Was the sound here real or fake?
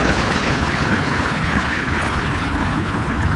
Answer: fake